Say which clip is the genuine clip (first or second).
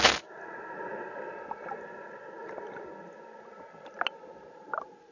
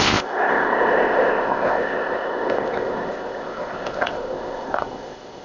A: first